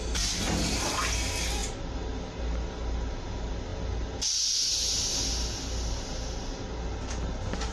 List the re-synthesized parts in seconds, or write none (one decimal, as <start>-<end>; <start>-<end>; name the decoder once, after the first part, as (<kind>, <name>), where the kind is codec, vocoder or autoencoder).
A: none